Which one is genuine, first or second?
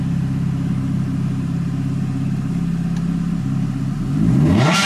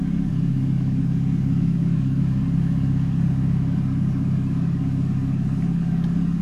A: first